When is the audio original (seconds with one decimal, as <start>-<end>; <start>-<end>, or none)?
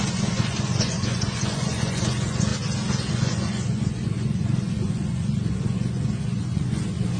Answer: 2.5-3.1